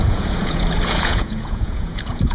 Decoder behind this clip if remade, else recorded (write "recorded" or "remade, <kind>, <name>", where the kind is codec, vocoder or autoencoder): remade, vocoder, Vocos